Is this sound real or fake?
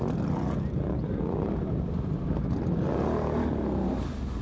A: real